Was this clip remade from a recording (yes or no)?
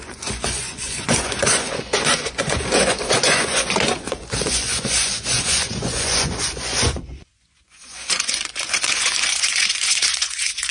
yes